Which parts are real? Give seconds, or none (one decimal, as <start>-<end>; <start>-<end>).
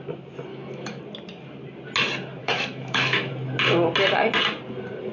0.0-0.5; 1.0-2.4; 3.3-5.1